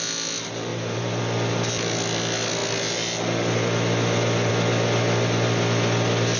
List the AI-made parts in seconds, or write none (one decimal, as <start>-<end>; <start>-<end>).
0.7-1.2